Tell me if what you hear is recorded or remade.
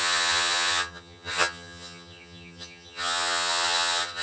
remade